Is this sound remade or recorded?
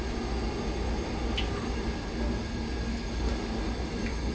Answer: recorded